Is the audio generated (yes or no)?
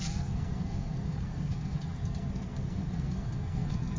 yes